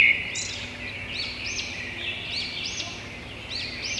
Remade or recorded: recorded